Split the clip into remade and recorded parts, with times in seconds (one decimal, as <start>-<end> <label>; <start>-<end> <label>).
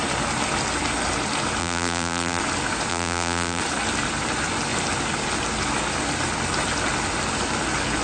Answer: 0.0-1.6 recorded; 1.6-2.4 remade; 2.4-2.9 recorded; 2.9-3.6 remade; 3.6-8.0 recorded